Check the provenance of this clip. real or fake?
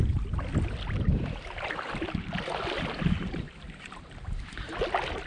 real